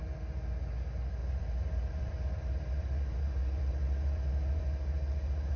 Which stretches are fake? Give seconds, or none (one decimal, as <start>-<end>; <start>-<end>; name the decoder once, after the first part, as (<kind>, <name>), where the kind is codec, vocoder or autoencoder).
1.2-4.6 (vocoder, BigVGAN v2)